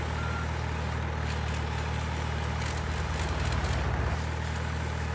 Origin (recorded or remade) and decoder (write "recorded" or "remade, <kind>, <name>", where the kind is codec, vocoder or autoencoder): recorded